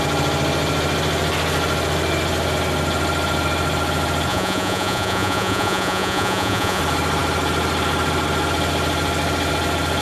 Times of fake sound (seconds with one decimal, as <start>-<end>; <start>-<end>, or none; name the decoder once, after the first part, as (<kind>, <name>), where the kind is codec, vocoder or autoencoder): 4.3-6.8 (vocoder, Vocos)